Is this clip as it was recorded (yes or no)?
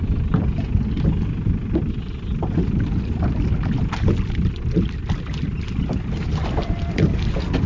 yes